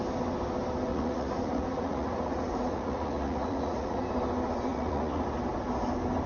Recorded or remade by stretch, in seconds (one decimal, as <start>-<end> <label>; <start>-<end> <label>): 0.0-0.9 recorded; 0.9-4.0 remade; 4.0-4.7 recorded; 4.7-5.2 remade; 5.2-6.3 recorded